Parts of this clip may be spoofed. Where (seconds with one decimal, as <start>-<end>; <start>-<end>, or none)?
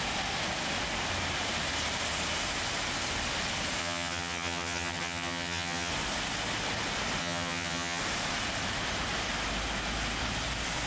3.8-5.9; 7.2-8.0